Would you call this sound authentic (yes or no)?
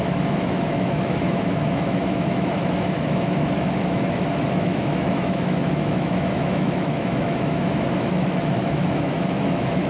no